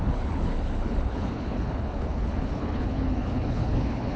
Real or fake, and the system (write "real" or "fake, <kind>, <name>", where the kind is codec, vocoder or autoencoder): fake, codec, HILCodec